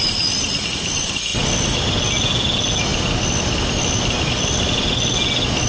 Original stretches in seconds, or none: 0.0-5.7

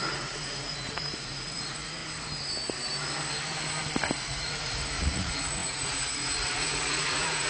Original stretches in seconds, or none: 2.0-4.2

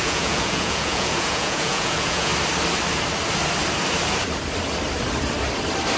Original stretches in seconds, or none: 2.3-6.0